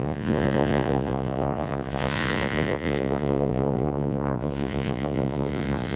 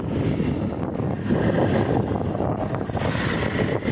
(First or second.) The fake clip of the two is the first